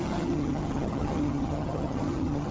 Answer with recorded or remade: remade